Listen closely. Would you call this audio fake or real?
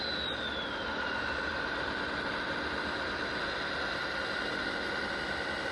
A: real